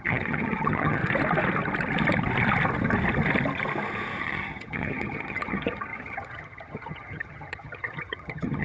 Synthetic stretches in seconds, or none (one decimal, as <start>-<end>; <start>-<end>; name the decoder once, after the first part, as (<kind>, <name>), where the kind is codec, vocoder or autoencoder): 0.0-1.0 (vocoder, HiFi-GAN); 4.2-8.6